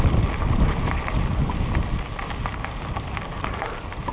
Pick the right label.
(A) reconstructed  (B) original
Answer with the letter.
A